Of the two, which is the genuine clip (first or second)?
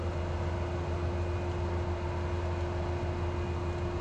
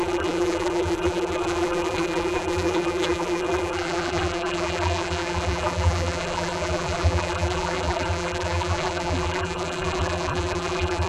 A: first